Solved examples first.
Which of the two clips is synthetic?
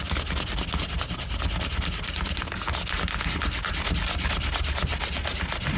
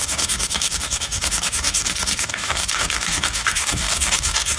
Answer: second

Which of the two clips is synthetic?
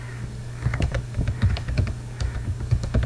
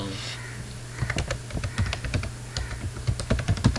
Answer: first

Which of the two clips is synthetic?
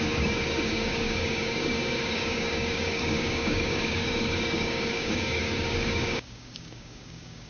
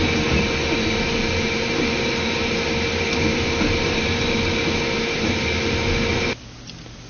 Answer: first